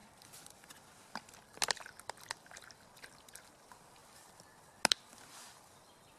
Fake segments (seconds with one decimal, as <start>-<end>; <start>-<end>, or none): none